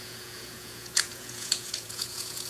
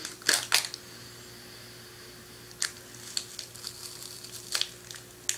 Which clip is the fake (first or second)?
first